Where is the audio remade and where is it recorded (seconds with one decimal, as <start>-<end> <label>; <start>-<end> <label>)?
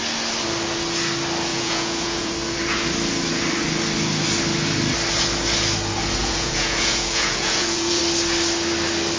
0.0-1.5 recorded; 1.5-2.3 remade; 2.3-6.2 recorded; 6.2-8.0 remade; 8.0-9.2 recorded